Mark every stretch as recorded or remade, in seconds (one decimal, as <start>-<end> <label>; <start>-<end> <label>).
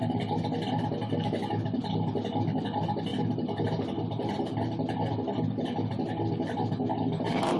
0.0-7.6 recorded